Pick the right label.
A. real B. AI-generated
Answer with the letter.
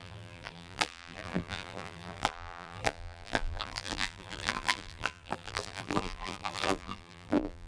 B